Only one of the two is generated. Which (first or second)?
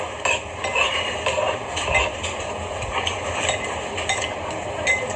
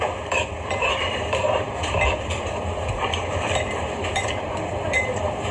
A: second